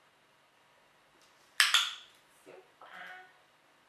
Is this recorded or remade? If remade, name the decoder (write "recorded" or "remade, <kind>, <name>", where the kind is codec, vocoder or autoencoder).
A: recorded